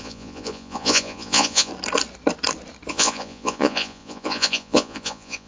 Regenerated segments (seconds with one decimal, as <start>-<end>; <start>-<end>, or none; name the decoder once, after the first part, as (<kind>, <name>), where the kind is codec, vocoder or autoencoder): 0.0-1.7 (vocoder, Vocos); 2.9-5.5